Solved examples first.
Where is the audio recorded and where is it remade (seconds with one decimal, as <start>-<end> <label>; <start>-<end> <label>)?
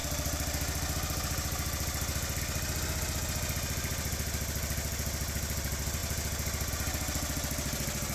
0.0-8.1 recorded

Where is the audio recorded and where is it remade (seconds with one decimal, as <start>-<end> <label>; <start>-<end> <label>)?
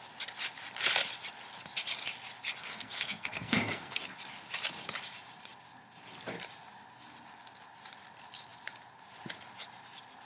0.0-2.6 recorded; 2.6-4.0 remade; 4.0-10.3 recorded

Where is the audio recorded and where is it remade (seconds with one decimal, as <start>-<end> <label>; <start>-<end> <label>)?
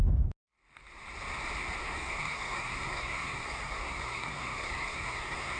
0.0-1.8 recorded; 1.8-5.6 remade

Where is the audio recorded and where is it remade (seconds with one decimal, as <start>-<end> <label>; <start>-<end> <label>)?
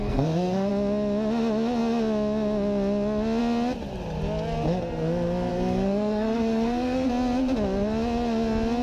0.0-0.7 remade; 0.7-5.5 recorded; 5.5-7.1 remade; 7.1-8.8 recorded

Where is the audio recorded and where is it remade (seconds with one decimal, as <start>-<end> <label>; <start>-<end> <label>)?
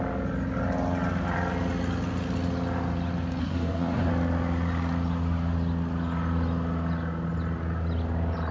0.0-3.4 recorded; 3.4-4.1 remade; 4.1-8.5 recorded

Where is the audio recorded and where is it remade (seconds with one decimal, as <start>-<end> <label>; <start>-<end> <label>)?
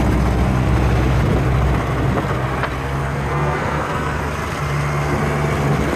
0.0-3.0 recorded; 3.0-4.2 remade; 4.2-6.0 recorded